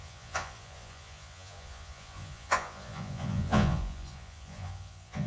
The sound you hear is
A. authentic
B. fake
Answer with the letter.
B